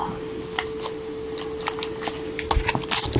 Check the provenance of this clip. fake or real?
real